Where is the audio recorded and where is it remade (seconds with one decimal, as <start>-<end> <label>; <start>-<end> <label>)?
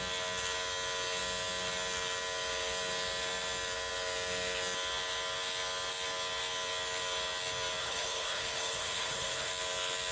0.0-7.8 recorded; 7.8-9.5 remade; 9.5-10.1 recorded